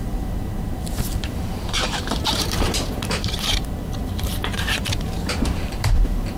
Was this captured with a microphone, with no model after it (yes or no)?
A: no